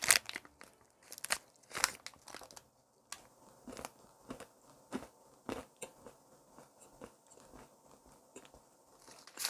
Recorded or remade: recorded